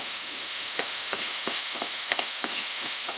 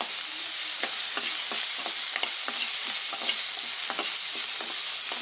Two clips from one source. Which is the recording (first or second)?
second